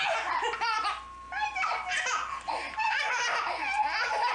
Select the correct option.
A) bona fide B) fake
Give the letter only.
B